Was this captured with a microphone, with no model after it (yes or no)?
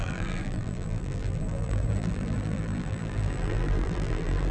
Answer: no